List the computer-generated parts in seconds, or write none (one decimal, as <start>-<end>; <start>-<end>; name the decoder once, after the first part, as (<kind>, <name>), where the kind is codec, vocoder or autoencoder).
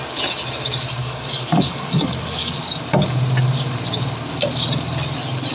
1.0-2.6 (codec, DAC)